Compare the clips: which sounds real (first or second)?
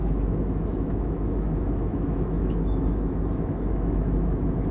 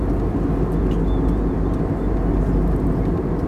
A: second